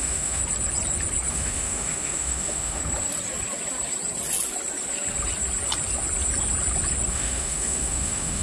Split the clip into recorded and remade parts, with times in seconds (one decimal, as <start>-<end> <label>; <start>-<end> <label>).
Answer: 0.0-0.4 remade; 0.4-1.3 recorded; 1.3-2.8 remade; 2.8-7.1 recorded; 7.1-8.4 remade